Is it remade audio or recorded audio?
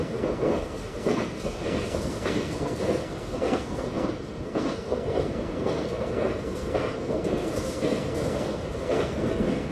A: remade